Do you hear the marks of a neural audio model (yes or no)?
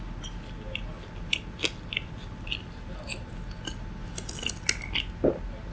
no